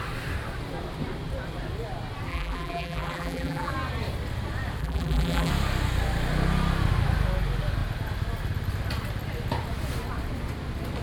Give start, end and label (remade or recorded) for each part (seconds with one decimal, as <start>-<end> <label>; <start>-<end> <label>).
0.0-2.3 recorded; 2.3-3.7 remade; 3.7-4.8 recorded; 4.8-5.5 remade; 5.5-11.0 recorded